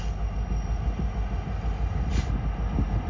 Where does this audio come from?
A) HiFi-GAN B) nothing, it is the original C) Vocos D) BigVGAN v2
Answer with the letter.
B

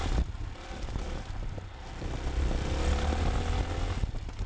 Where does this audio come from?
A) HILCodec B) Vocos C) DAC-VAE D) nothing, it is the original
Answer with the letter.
D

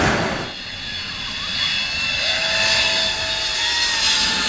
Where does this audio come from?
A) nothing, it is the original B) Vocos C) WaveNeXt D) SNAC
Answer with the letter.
A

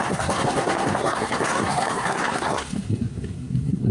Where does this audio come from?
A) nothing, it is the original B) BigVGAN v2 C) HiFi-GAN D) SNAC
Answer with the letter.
D